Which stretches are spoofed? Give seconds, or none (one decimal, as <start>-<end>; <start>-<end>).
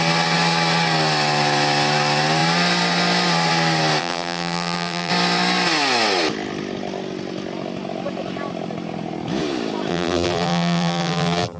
4.0-5.1; 9.9-11.6